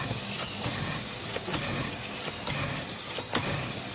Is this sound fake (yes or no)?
yes